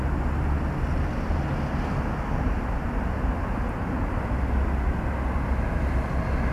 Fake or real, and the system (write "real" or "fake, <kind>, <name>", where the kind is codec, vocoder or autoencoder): real